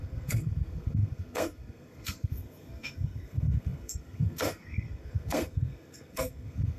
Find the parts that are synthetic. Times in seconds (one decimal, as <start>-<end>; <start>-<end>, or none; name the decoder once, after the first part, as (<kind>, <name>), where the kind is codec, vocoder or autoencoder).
0.0-6.8 (codec, SNAC)